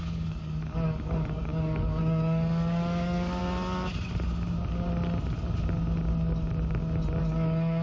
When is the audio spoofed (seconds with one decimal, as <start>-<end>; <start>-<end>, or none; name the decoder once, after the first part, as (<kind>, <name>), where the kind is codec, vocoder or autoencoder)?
0.0-3.4 (codec, DAC); 7.2-7.8